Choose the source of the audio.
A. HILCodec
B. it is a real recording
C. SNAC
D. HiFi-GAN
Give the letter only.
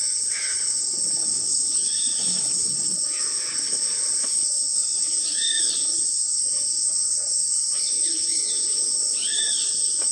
A